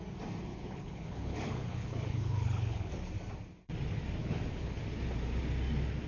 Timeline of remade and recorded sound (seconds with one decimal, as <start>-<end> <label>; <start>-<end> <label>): 0.0-0.5 recorded; 0.5-2.9 remade; 2.9-4.2 recorded; 4.2-4.8 remade; 4.8-6.1 recorded